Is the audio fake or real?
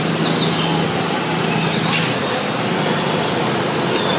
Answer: real